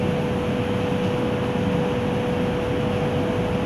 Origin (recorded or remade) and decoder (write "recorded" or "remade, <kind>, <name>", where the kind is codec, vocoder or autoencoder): recorded